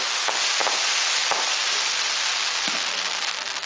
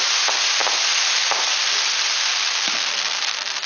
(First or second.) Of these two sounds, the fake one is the second